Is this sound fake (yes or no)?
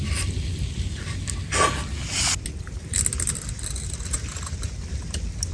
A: no